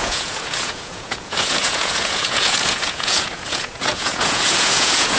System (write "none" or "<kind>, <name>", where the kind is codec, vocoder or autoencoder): vocoder, Vocos